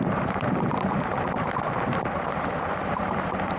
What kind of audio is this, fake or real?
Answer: fake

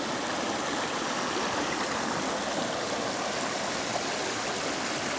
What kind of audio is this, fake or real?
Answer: real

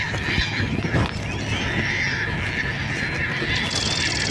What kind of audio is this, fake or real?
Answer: real